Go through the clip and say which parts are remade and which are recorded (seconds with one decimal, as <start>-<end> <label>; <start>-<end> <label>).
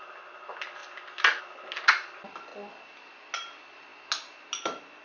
0.0-5.0 recorded